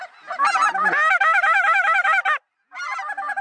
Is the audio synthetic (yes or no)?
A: no